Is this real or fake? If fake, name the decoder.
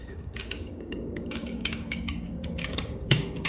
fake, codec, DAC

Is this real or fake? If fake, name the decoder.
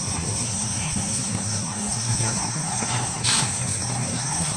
fake, codec, SNAC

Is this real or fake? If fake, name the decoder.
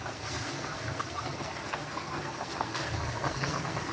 fake, codec, SNAC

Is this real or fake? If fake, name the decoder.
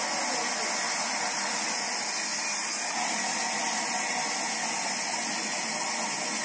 real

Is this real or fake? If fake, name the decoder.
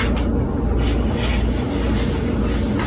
real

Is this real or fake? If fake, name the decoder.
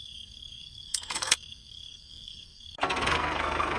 fake, codec, SNAC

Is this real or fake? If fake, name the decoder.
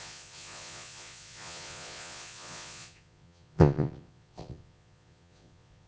fake, vocoder, Vocos